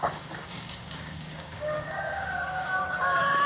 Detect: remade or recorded remade